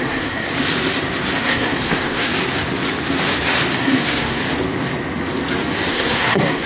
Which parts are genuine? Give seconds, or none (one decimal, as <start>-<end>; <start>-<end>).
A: 0.5-1.4; 2.3-3.8; 4.4-5.9